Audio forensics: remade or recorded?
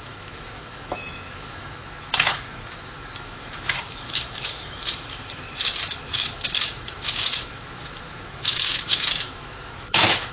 remade